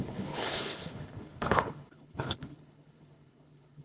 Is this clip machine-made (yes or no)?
yes